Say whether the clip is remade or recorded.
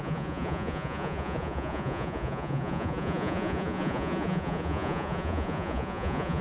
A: remade